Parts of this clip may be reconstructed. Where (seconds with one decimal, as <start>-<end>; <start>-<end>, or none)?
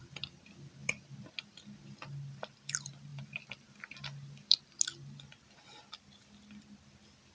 0.8-1.8; 3.1-4.8